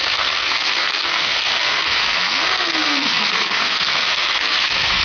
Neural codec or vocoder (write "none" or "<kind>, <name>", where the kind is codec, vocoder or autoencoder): codec, SNAC